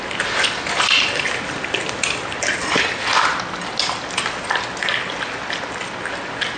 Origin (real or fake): real